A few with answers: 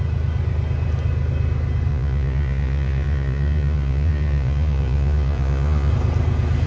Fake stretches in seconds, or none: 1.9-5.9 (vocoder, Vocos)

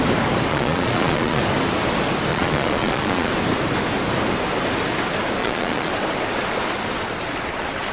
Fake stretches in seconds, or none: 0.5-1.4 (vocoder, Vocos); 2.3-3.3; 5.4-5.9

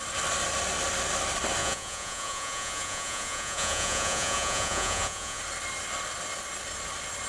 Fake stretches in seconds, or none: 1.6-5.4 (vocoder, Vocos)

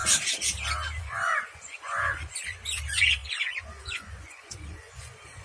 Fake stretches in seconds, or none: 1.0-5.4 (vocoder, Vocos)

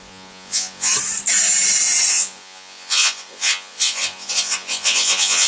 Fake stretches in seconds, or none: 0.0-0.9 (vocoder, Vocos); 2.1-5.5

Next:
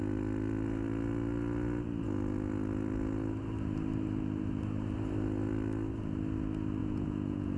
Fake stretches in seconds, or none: 6.8-7.6 (vocoder, Vocos)